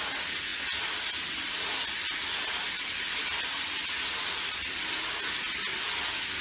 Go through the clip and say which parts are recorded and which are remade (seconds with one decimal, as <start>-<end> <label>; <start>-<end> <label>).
0.0-6.4 recorded